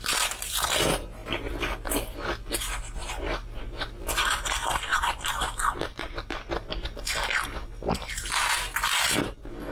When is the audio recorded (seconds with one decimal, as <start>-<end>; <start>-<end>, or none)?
0.0-4.9; 6.3-9.7